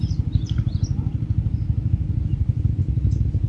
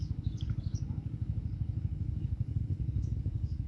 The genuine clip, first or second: first